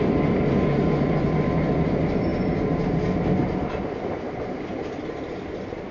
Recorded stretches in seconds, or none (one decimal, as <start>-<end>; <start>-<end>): 0.0-5.9